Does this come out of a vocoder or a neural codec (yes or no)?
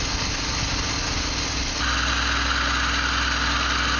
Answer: no